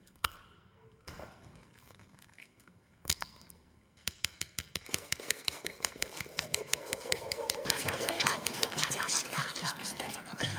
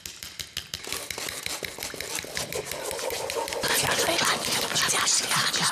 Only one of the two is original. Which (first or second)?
second